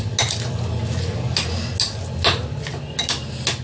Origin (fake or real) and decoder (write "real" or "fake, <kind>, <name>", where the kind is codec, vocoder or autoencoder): real